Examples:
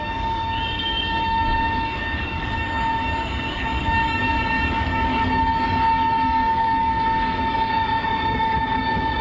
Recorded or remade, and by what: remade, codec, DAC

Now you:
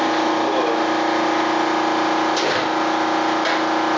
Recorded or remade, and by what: recorded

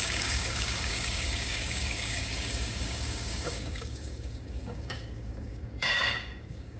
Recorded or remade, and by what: remade, codec, DAC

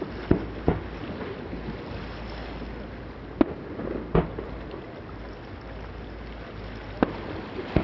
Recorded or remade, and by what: recorded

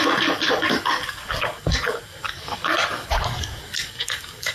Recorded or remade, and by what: remade, codec, DAC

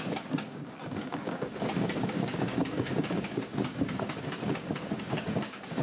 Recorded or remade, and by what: remade, codec, DAC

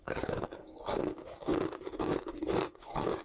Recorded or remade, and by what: remade, codec, DAC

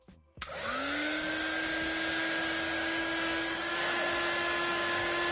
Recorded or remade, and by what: remade, codec, DAC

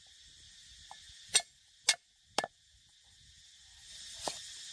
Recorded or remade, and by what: recorded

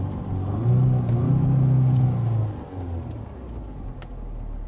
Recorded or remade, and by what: recorded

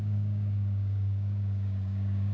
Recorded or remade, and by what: remade, codec, DAC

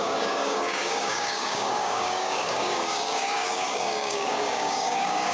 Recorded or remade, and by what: remade, codec, DAC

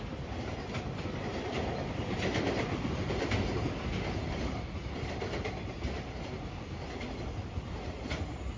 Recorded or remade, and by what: recorded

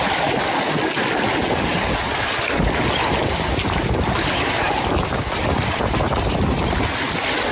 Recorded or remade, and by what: recorded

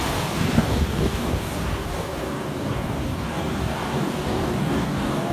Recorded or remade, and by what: remade, codec, DAC